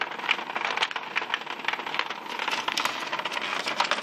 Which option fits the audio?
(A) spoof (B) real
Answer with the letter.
B